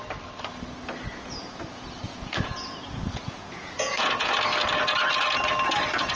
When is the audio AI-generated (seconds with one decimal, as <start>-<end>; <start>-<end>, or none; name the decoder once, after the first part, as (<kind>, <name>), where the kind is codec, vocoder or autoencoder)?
1.1-4.3 (vocoder, Vocos)